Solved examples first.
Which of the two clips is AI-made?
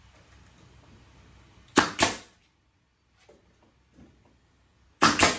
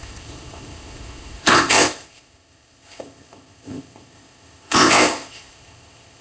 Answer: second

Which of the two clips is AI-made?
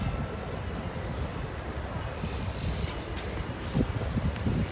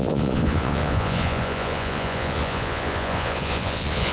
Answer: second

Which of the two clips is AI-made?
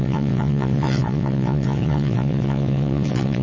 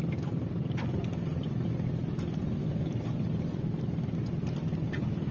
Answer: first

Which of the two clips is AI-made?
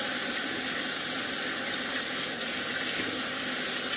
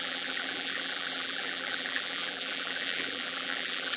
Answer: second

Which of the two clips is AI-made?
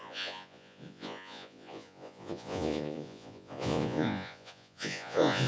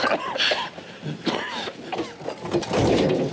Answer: first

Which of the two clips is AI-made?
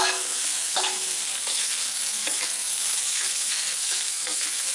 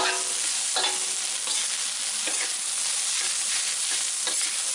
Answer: first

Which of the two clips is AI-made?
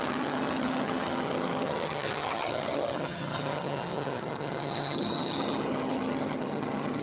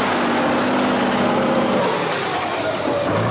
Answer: first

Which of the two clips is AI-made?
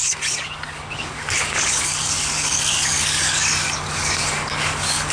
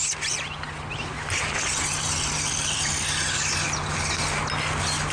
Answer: first